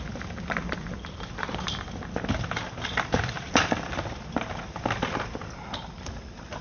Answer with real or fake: fake